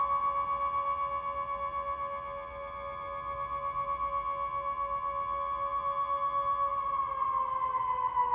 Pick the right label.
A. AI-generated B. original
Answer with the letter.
B